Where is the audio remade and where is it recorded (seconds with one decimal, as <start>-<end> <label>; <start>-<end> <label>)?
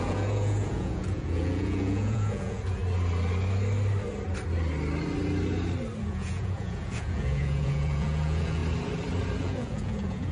0.0-2.8 remade; 2.8-6.0 recorded; 6.0-8.6 remade; 8.6-9.4 recorded; 9.4-10.3 remade